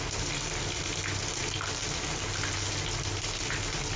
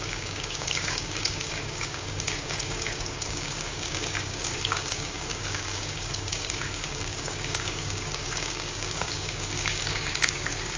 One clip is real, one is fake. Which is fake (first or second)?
second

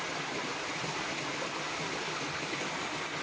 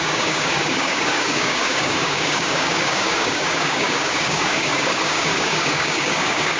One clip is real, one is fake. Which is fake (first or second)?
second